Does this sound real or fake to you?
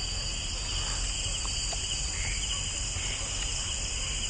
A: real